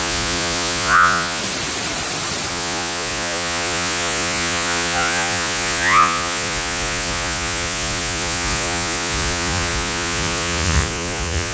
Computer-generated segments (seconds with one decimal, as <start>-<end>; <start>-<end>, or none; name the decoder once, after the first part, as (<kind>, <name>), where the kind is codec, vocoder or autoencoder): 0.0-1.4 (vocoder, Vocos); 2.5-11.5